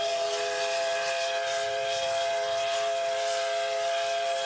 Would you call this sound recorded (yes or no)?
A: yes